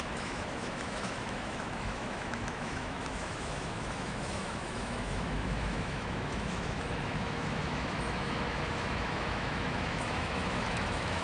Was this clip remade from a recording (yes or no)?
yes